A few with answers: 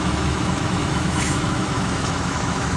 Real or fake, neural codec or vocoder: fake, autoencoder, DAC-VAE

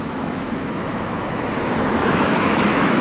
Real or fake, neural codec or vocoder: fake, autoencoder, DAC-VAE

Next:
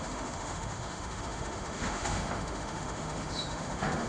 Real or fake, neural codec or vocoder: fake, autoencoder, DAC-VAE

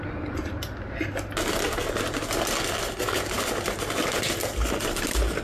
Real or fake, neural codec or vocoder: real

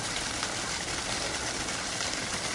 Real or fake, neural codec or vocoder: real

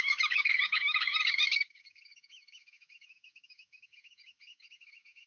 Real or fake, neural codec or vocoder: fake, autoencoder, DAC-VAE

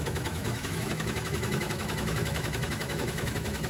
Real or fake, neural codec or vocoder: fake, autoencoder, DAC-VAE